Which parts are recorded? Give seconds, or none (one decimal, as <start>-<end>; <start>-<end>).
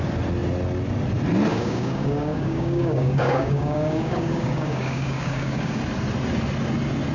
0.0-1.5; 5.8-7.1